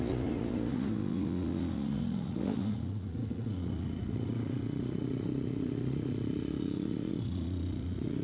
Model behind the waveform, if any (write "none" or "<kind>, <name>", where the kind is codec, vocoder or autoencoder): vocoder, Vocos